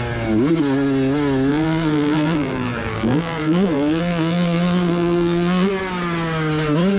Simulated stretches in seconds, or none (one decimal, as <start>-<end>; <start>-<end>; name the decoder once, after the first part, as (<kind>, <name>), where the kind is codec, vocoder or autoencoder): 1.5-5.7 (vocoder, BigVGAN v2)